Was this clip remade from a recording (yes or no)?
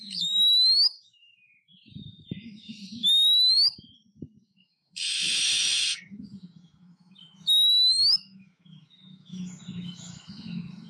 yes